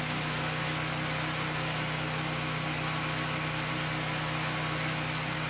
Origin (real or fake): real